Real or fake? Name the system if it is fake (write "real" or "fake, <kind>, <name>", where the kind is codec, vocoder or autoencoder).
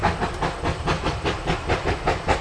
real